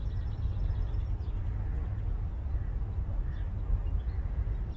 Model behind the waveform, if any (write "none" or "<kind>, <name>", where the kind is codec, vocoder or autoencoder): none